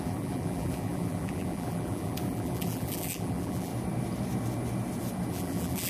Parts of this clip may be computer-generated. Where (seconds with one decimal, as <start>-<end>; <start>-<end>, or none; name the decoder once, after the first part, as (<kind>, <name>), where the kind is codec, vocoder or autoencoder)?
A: 0.0-3.7 (vocoder, BigVGAN v2); 5.3-5.9